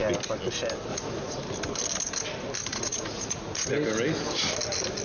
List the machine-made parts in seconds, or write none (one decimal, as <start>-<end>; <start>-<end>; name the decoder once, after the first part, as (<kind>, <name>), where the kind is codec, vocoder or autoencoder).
0.9-1.4 (vocoder, Vocos); 2.7-3.7